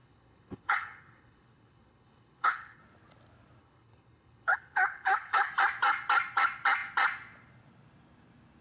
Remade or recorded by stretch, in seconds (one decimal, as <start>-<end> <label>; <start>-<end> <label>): 0.0-2.8 remade; 2.8-3.6 recorded; 3.6-5.5 remade; 5.5-8.6 recorded